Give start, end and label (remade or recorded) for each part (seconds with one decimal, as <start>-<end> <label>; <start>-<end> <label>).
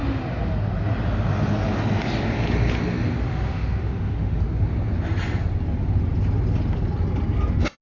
0.0-3.3 recorded; 3.3-4.4 remade; 4.4-7.8 recorded